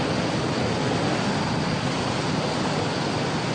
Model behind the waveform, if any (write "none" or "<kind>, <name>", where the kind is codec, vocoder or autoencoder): none